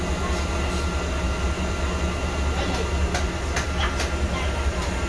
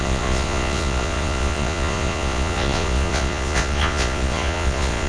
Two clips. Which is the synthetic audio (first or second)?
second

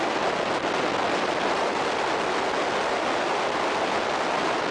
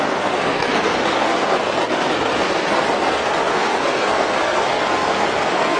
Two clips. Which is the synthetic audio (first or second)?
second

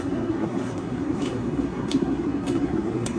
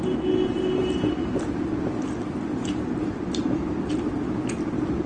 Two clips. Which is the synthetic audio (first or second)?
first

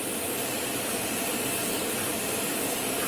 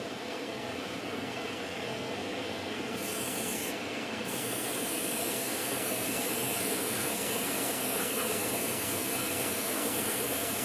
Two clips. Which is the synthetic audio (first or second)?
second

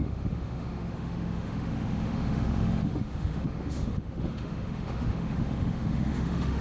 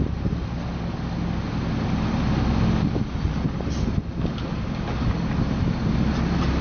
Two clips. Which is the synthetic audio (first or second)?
first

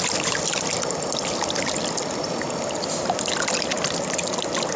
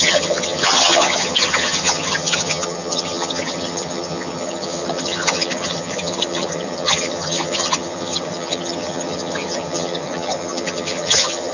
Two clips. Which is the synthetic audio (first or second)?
second